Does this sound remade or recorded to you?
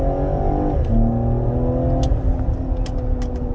recorded